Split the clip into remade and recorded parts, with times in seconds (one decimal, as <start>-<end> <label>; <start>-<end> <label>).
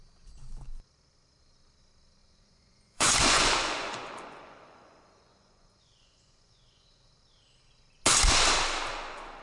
0.0-2.2 recorded; 2.2-7.1 remade; 7.1-8.9 recorded; 8.9-9.4 remade